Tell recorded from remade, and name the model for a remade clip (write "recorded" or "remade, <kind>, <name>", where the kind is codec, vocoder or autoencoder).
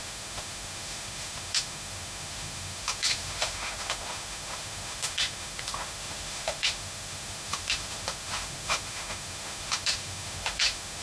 remade, autoencoder, DAC-VAE